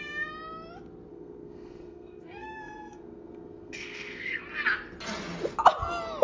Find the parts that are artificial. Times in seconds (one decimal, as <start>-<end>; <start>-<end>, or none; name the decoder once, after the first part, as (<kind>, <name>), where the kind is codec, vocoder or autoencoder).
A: 1.1-4.4 (codec, SNAC)